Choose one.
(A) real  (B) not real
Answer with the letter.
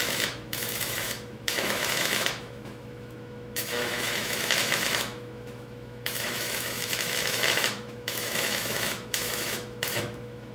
B